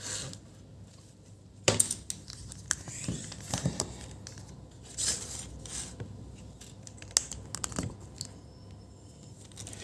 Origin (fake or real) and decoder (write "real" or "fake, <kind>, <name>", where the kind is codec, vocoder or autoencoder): real